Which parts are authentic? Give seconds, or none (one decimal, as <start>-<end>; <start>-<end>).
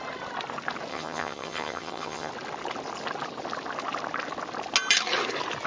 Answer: 0.0-0.9; 2.3-5.7